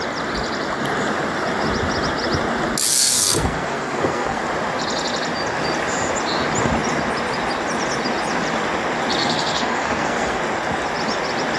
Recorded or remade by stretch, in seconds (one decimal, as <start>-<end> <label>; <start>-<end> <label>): 0.0-2.9 recorded; 2.9-4.4 remade; 4.4-9.2 recorded; 9.2-10.4 remade; 10.4-11.6 recorded